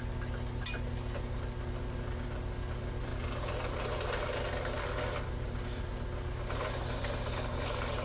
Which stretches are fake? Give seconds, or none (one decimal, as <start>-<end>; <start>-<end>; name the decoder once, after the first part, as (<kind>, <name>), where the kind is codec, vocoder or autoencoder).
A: none